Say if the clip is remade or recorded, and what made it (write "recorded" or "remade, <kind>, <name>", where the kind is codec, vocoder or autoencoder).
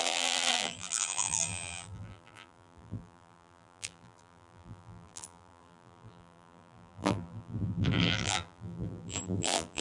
remade, vocoder, BigVGAN v2